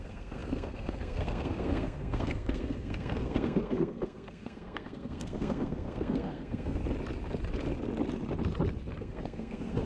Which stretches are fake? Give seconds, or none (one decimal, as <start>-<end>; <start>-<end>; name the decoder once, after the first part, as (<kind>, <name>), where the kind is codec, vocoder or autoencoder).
0.0-6.8 (codec, SNAC); 9.0-9.9